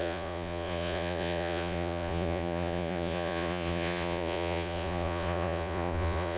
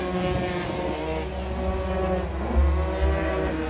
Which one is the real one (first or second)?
second